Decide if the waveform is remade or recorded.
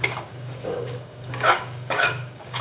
remade